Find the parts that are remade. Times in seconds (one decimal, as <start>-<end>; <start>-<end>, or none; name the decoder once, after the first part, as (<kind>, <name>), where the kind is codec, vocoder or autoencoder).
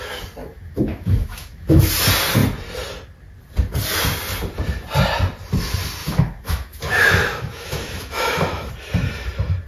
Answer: 0.4-1.9 (autoencoder, DAC-VAE); 6.0-8.7